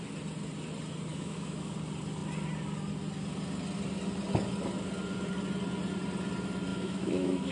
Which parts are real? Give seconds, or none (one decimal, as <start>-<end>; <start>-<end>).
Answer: 0.0-1.1; 1.7-6.7

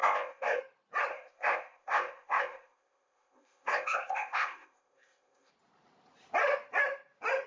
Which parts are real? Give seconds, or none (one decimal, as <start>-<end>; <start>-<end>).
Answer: 0.6-1.1; 5.5-7.5

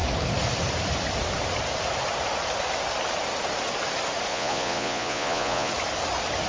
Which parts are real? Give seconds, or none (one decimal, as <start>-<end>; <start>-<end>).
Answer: 0.0-4.3; 5.7-6.5

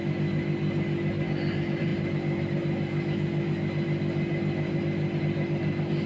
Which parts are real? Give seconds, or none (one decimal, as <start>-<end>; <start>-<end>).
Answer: 0.0-6.1